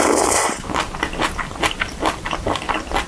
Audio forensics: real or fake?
real